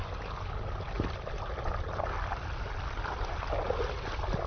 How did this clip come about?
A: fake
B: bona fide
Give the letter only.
B